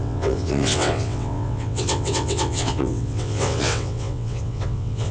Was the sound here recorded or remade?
remade